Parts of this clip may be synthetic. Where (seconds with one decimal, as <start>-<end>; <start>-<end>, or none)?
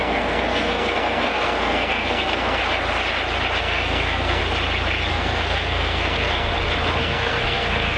0.0-2.6; 3.6-4.4; 5.1-6.5; 7.0-8.0